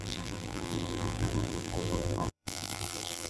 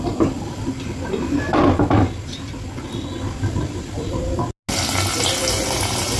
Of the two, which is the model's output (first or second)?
first